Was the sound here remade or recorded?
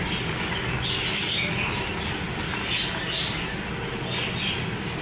recorded